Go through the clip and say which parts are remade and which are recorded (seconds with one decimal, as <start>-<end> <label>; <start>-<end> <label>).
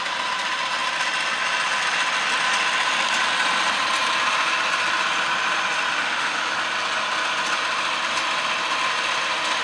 0.0-6.0 recorded; 6.0-6.5 remade; 6.5-9.6 recorded